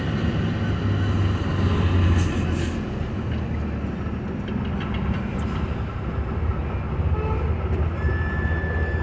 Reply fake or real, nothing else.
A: real